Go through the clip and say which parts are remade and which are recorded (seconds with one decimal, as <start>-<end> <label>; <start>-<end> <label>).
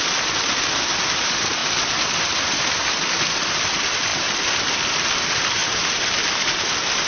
0.0-4.1 remade; 4.1-4.7 recorded; 4.7-7.1 remade